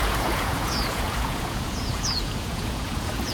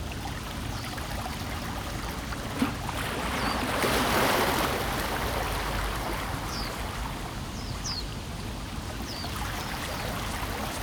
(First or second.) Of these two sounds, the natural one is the second